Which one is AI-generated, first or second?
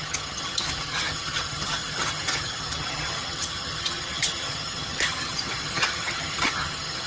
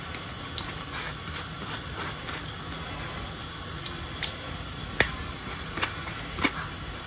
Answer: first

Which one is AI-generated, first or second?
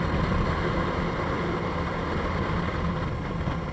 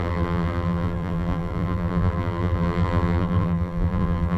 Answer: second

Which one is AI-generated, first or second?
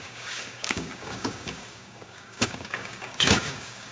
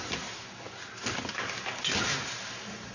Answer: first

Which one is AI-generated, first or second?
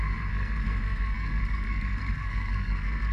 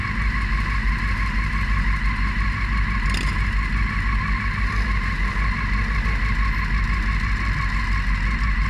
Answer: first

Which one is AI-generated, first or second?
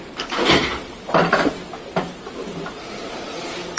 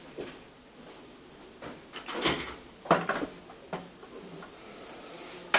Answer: first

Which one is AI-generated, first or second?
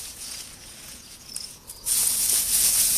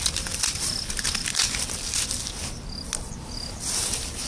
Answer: first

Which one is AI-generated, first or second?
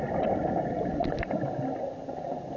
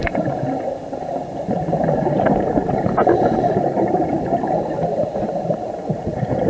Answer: second